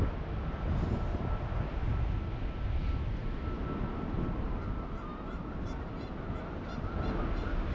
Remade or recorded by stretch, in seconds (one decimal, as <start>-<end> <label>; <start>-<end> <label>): 0.0-7.7 recorded